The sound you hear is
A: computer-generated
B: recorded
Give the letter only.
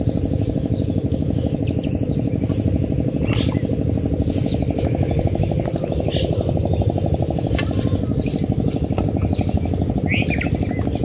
B